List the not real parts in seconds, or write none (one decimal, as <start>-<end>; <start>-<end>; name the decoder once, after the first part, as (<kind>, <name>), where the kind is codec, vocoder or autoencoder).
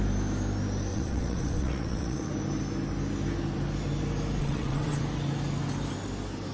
0.9-2.3 (vocoder, WaveNeXt); 4.4-5.0